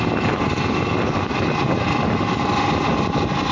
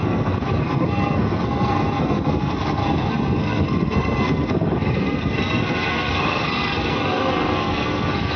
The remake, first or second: second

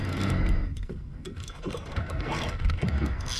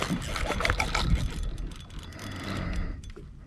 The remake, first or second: first